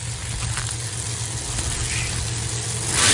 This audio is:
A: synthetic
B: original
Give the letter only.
B